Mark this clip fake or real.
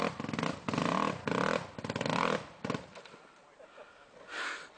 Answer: real